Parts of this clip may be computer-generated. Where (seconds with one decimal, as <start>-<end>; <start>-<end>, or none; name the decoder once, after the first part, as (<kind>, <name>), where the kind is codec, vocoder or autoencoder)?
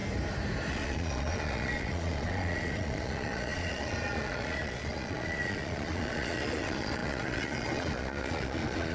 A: 0.7-8.9 (vocoder, Vocos)